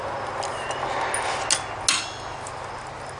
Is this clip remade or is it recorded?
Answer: recorded